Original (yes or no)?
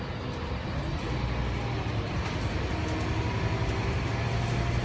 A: yes